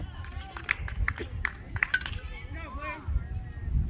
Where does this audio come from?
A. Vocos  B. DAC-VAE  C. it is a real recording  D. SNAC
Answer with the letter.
C